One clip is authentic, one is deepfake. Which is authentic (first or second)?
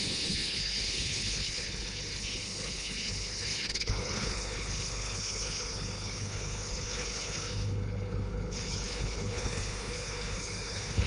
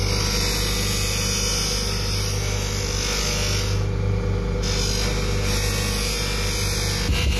second